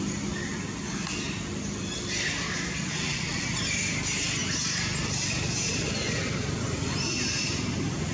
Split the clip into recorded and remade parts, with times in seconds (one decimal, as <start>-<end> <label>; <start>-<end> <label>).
0.0-2.9 recorded; 2.9-3.4 remade; 3.4-8.1 recorded